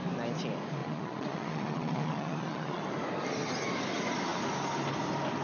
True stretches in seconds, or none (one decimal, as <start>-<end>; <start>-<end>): 0.0-0.8; 2.8-5.4